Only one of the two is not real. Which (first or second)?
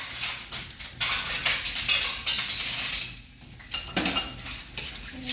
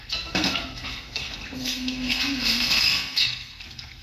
second